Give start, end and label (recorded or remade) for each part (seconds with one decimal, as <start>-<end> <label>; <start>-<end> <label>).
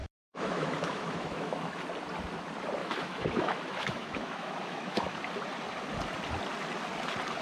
0.0-1.8 remade; 1.8-2.8 recorded; 2.8-5.2 remade; 5.2-7.4 recorded